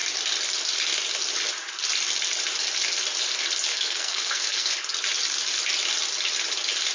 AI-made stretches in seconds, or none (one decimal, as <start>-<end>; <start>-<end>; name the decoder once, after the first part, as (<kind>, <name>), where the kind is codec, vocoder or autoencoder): 3.7-4.7 (codec, SNAC)